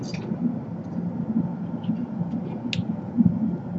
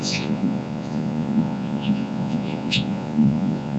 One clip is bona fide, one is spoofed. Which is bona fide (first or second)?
first